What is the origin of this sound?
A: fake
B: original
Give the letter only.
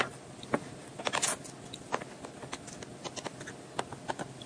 B